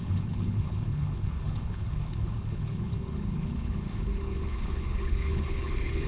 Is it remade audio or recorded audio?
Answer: remade